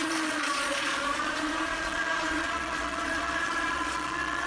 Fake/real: fake